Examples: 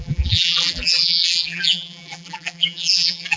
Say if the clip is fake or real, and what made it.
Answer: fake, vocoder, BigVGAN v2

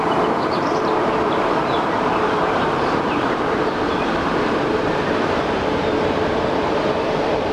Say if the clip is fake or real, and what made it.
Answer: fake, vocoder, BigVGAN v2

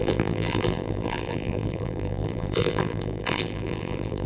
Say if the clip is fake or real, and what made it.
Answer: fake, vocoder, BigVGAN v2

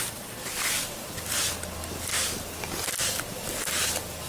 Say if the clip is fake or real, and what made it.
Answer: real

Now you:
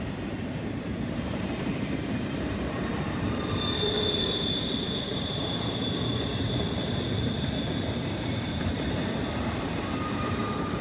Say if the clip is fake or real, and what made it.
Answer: fake, vocoder, BigVGAN v2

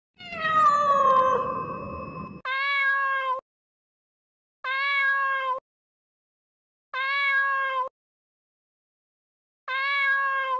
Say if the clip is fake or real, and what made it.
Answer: real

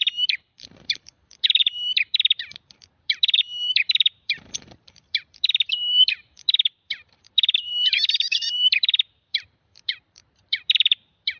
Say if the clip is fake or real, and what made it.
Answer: fake, vocoder, BigVGAN v2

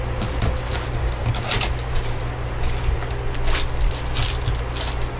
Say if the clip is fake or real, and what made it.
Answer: real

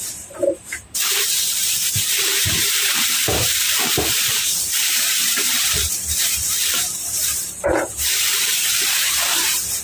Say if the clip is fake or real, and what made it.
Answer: fake, vocoder, BigVGAN v2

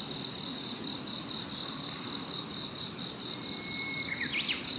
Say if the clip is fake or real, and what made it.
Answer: real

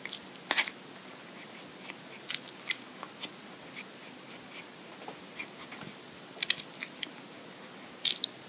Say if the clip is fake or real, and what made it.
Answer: real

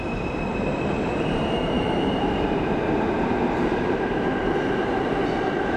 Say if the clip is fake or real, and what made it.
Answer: fake, vocoder, BigVGAN v2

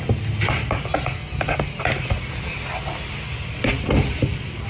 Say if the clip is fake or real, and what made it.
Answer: real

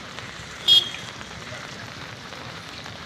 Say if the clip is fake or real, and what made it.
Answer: fake, vocoder, BigVGAN v2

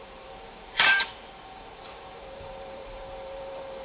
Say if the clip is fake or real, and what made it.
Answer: fake, vocoder, BigVGAN v2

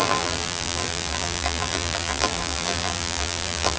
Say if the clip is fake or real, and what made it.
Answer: fake, vocoder, BigVGAN v2